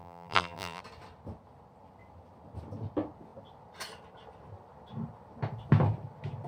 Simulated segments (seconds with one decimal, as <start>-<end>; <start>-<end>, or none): 0.0-0.8